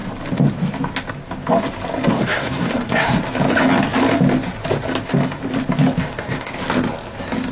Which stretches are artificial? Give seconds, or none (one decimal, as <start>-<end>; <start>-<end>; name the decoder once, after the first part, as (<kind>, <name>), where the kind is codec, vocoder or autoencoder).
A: 2.1-3.2 (codec, SNAC); 6.0-6.5